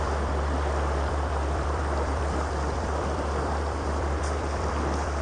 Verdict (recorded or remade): remade